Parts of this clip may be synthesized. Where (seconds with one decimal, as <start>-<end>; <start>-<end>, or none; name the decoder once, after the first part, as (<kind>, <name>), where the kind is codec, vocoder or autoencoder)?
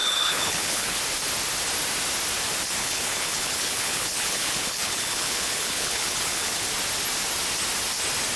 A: 0.0-1.0 (codec, HILCodec); 2.8-6.7